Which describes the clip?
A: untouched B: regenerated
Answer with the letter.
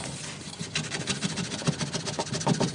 A